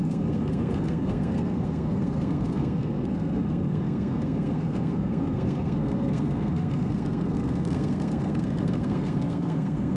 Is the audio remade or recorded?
remade